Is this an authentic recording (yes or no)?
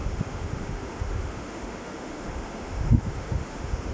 no